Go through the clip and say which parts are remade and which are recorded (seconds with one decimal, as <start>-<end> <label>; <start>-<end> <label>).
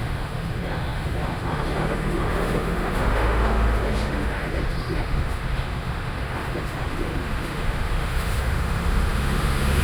0.0-9.8 remade